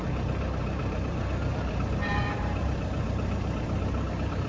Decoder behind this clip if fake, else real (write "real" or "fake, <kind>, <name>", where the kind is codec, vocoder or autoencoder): fake, vocoder, BigVGAN v2